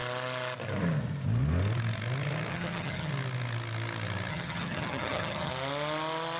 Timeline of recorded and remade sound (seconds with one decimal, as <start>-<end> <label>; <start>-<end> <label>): 0.0-2.5 recorded; 2.5-3.1 remade; 3.1-4.3 recorded; 4.3-5.5 remade; 5.5-6.4 recorded